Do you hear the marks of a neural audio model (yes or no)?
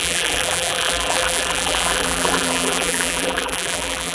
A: yes